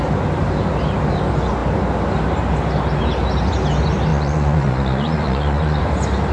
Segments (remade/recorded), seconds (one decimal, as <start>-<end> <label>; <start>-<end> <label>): 0.0-4.1 recorded; 4.1-5.8 remade; 5.8-6.3 recorded